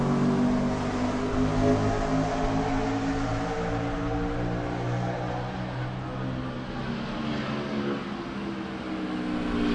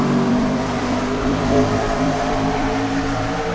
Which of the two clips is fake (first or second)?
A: second